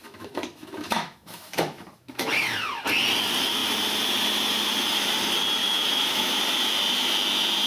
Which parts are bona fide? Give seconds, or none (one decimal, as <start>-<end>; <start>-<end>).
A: 2.3-5.6; 6.4-7.7